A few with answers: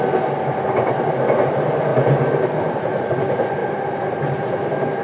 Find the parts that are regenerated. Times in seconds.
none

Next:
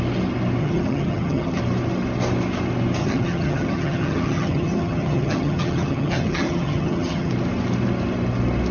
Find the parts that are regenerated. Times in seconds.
0.6-1.6 (vocoder, HiFi-GAN); 3.0-7.3

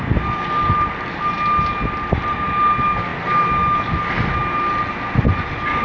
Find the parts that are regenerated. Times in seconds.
none

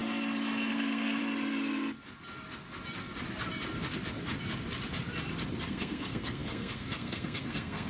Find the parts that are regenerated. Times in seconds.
0.7-1.2 (codec, SNAC); 5.7-7.9